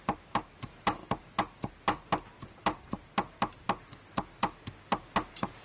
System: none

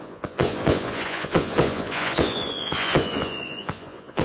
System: vocoder, Vocos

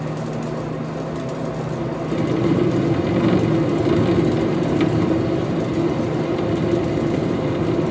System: none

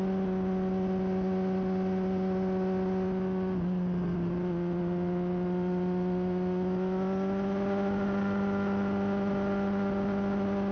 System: none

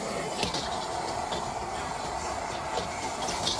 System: none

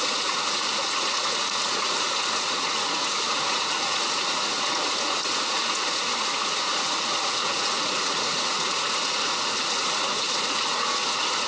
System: vocoder, Vocos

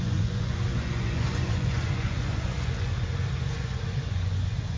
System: vocoder, Vocos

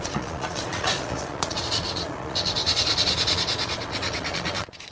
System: vocoder, Vocos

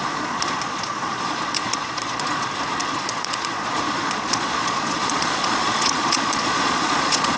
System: vocoder, Vocos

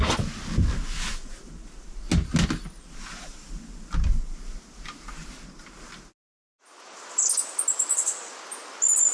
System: none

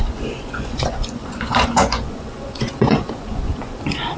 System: vocoder, Vocos